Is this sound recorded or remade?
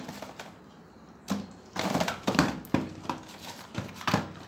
recorded